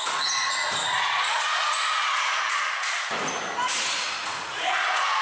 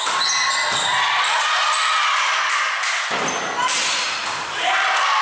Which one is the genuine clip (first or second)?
second